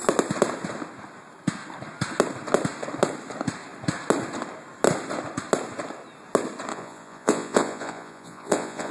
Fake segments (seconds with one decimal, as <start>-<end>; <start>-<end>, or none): 6.7-8.9